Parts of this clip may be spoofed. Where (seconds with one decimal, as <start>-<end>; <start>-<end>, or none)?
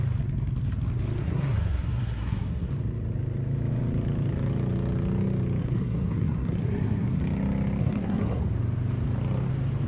1.2-2.7; 5.6-7.2; 7.8-8.4